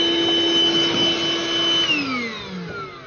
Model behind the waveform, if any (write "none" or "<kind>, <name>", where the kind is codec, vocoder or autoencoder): none